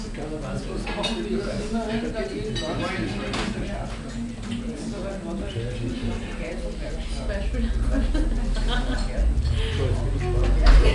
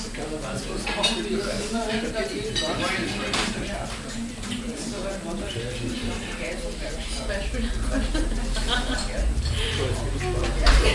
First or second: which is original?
first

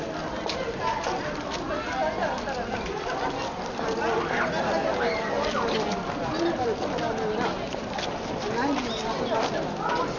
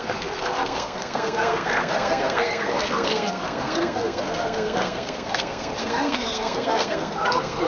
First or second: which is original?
first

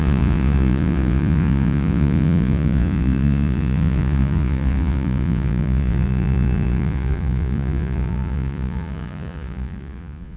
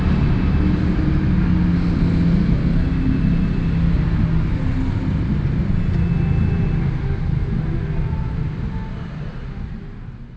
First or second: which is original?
second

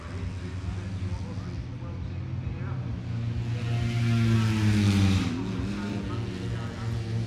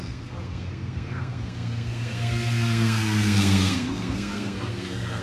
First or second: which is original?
first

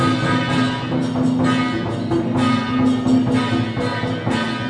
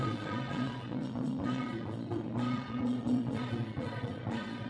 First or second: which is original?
first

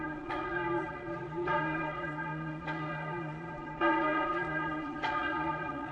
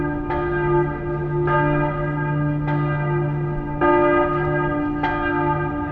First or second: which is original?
second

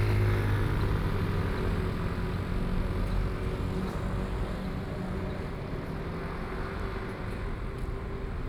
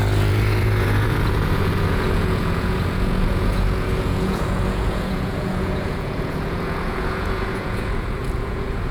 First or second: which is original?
first